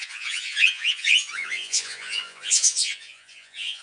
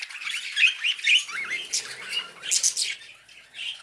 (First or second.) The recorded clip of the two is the second